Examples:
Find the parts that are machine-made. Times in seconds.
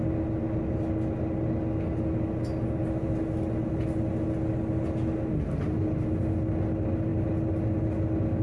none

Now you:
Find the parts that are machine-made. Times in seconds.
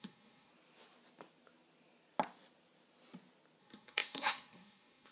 0.0-0.5; 3.6-5.1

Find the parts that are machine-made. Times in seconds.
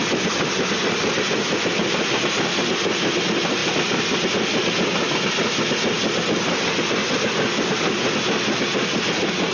none